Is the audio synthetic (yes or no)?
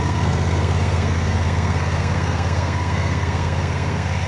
yes